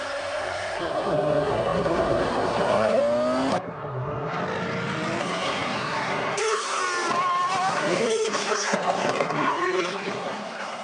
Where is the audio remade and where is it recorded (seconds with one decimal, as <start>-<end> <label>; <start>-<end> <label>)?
0.0-3.0 remade; 3.0-3.5 recorded; 3.5-4.4 remade; 4.4-5.2 recorded; 5.2-6.8 remade; 6.8-7.7 recorded; 7.7-10.8 remade